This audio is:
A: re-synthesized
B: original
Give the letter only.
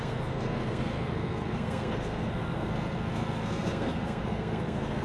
A